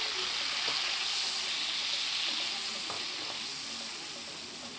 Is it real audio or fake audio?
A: real